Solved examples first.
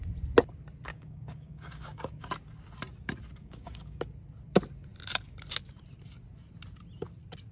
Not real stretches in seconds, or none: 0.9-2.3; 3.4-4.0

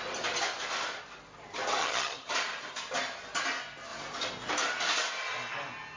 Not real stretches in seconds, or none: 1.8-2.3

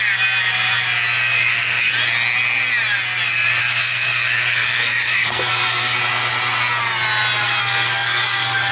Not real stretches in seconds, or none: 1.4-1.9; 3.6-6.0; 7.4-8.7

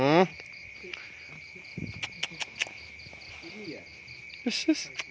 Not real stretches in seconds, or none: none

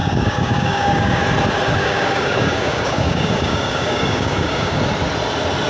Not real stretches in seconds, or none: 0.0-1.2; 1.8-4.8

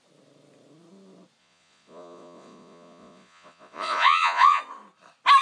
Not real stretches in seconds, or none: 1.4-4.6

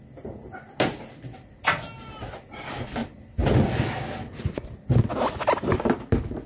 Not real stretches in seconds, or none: none